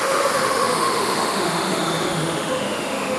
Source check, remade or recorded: remade